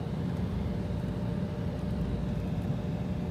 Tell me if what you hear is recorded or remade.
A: recorded